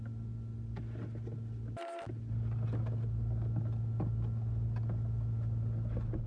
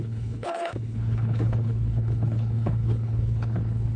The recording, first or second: first